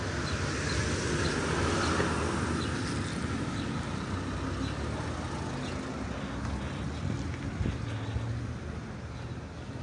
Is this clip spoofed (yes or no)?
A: no